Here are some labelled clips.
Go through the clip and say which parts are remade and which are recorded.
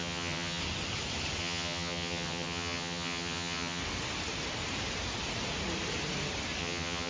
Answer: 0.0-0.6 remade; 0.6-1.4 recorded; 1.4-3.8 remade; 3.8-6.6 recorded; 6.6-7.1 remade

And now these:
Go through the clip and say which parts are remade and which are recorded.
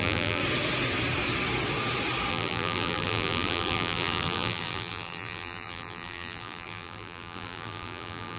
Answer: 0.0-0.4 remade; 0.4-2.3 recorded; 2.3-8.4 remade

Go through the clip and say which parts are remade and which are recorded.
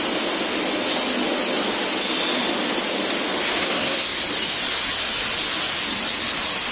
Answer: 0.0-3.6 recorded; 3.6-4.2 remade; 4.2-6.7 recorded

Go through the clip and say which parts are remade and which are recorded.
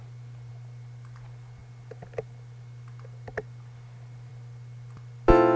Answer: 0.0-5.6 recorded